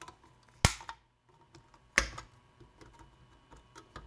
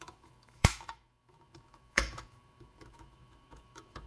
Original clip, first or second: first